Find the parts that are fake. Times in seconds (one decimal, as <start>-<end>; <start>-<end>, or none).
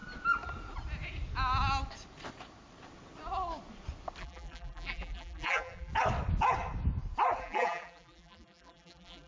4.2-5.9; 7.4-9.3